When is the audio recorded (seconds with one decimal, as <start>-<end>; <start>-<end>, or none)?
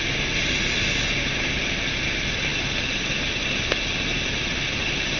0.0-5.2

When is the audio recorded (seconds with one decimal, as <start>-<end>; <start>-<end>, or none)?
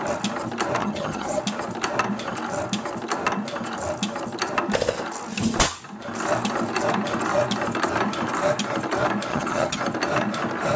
0.0-0.8; 1.4-9.3; 9.8-10.8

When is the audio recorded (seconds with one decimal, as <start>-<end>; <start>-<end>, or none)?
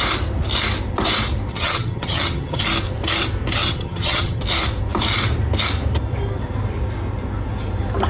0.0-1.5; 2.6-3.6; 4.4-8.1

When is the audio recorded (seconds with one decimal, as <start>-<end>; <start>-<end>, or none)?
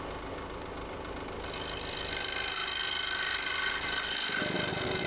0.0-5.1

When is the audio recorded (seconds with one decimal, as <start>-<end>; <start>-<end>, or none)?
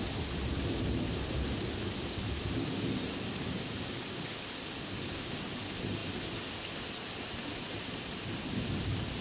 0.0-9.2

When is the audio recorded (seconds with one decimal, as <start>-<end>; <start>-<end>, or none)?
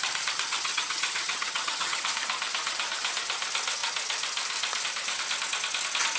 0.0-0.5; 2.0-6.2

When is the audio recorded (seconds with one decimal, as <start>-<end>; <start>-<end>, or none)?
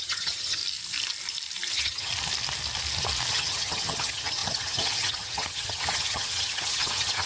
0.6-1.7; 2.1-3.3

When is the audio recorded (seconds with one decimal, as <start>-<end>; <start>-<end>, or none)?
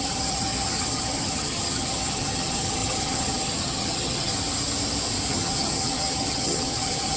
4.3-5.3